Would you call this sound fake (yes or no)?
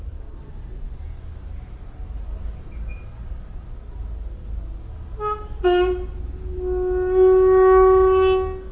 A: no